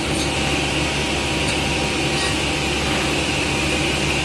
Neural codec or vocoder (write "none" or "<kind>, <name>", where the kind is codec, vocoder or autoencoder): none